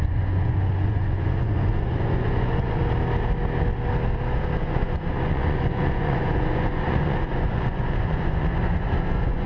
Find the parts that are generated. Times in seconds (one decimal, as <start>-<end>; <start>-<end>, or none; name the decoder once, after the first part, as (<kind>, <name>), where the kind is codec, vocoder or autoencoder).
0.0-2.8 (vocoder, Vocos); 4.6-9.5